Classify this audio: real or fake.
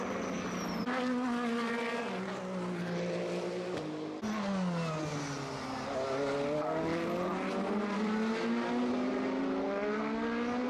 real